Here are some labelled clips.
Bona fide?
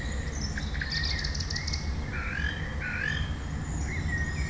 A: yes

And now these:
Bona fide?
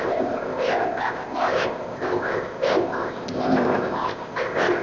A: no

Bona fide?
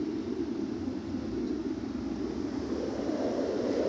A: yes